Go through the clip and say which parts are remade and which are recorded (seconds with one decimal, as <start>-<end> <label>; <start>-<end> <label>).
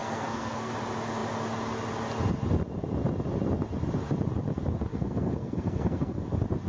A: 0.0-0.7 remade; 0.7-4.9 recorded; 4.9-6.2 remade; 6.2-6.7 recorded